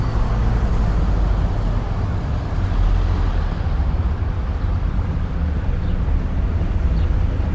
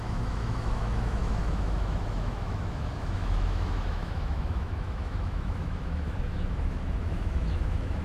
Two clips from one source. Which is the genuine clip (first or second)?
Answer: first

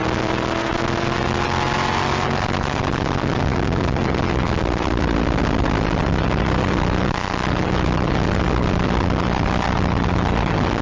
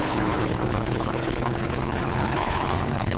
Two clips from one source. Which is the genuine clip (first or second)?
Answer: first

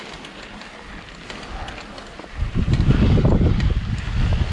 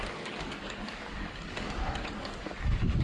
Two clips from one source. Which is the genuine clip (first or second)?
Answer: first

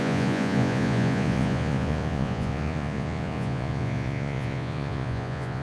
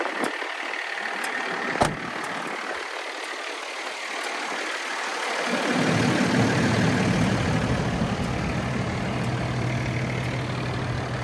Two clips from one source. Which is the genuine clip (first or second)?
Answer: second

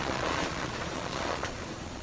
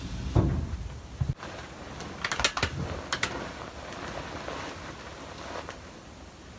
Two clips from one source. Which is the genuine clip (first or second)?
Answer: second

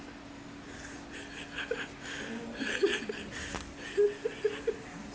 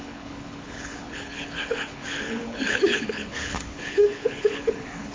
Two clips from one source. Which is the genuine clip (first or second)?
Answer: first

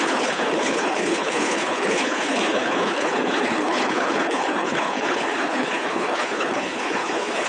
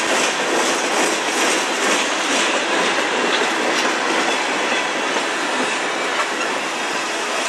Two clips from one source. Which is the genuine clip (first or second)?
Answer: second